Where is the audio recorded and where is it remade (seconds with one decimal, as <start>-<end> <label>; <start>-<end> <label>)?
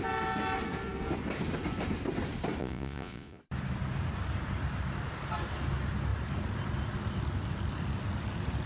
0.0-2.6 recorded; 2.6-3.4 remade; 3.4-8.7 recorded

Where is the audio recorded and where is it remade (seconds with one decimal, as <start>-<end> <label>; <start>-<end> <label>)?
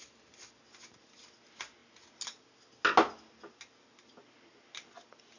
0.0-5.4 recorded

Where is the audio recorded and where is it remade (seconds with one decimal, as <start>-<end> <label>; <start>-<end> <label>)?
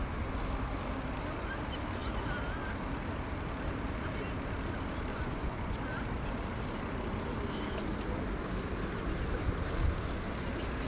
0.0-5.1 recorded; 5.1-5.8 remade; 5.8-10.9 recorded